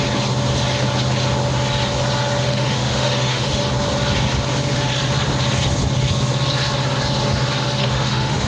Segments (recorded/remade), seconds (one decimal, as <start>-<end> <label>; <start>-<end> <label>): 0.0-2.4 recorded; 2.4-3.6 remade; 3.6-7.8 recorded; 7.8-8.5 remade